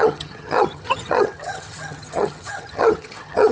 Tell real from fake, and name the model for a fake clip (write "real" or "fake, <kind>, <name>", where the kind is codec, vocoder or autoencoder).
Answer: fake, vocoder, HiFi-GAN